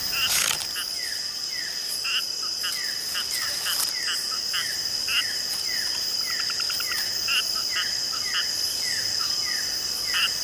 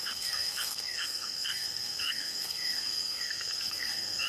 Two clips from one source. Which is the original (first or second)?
first